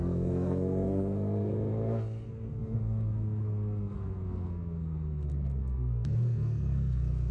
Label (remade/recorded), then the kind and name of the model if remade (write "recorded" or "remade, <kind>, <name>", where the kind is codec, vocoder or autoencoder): remade, codec, SNAC